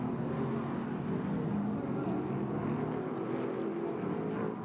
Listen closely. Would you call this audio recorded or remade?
recorded